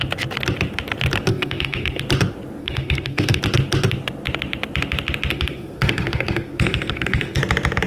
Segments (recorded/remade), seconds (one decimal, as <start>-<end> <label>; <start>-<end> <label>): 0.0-1.3 recorded; 1.3-2.0 remade; 2.0-2.6 recorded; 2.6-3.4 remade; 3.4-5.3 recorded; 5.3-7.4 remade; 7.4-7.9 recorded